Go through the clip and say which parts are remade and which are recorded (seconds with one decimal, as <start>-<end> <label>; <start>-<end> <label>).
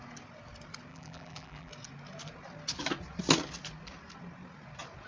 0.0-0.9 recorded; 0.9-1.7 remade; 1.7-5.1 recorded